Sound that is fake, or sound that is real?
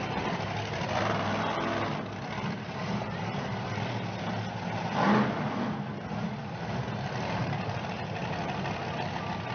real